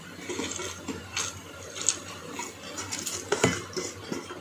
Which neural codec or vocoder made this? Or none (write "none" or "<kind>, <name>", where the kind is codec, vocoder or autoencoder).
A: none